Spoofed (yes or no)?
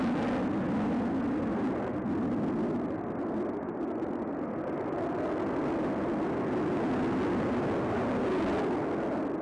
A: no